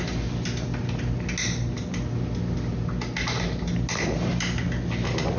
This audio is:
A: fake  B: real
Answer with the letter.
B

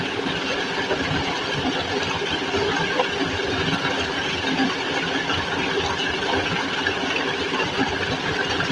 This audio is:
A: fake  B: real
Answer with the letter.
B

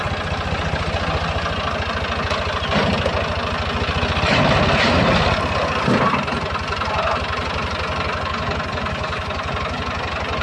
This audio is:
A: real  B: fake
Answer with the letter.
A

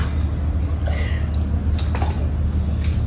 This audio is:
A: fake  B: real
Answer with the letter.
B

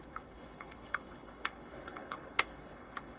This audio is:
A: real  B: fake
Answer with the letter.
B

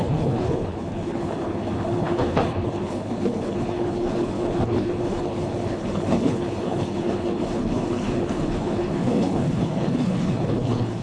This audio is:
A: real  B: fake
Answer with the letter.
B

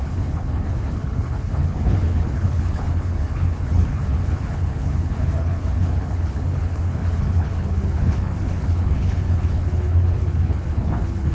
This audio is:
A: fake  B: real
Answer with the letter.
A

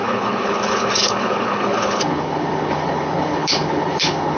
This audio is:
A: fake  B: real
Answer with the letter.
A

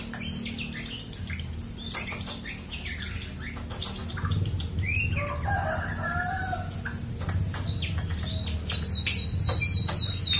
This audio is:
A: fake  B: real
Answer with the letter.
B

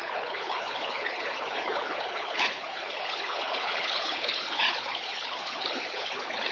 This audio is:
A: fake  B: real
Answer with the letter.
A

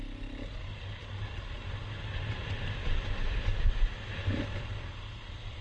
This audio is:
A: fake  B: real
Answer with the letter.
B